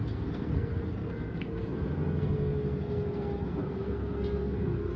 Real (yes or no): no